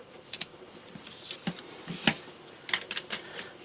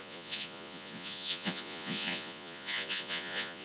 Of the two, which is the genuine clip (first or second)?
first